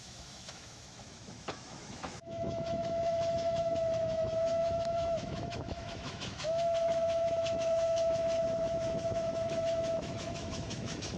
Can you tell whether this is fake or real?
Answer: fake